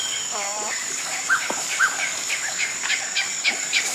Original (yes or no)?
no